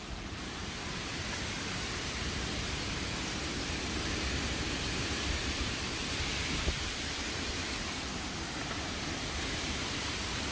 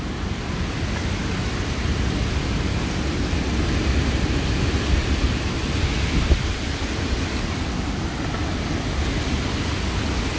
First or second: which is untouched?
second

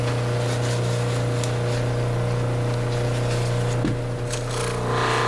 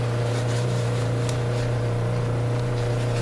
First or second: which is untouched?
first